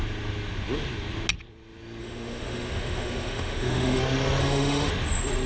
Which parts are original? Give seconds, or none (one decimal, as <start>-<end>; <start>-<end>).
0.0-2.0; 4.0-4.4; 4.9-5.5